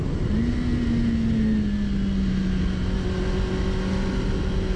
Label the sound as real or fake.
real